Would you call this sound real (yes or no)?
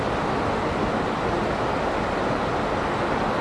yes